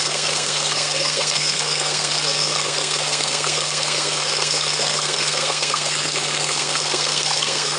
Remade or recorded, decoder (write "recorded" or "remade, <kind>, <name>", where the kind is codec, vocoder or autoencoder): remade, codec, SNAC